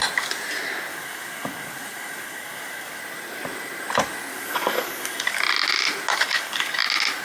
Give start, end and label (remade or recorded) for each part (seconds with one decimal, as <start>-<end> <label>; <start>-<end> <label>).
0.0-0.9 recorded; 0.9-3.0 remade; 3.0-4.3 recorded; 4.3-5.4 remade; 5.4-6.1 recorded; 6.1-6.7 remade; 6.7-7.2 recorded